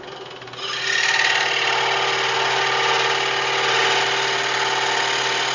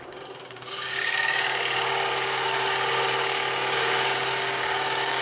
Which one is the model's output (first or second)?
second